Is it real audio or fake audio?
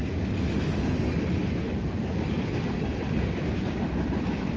real